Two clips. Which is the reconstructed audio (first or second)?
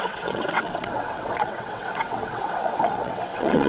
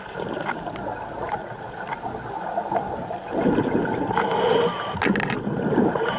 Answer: first